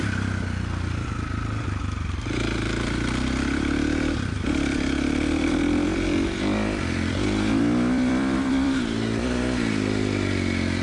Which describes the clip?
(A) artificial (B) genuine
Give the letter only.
A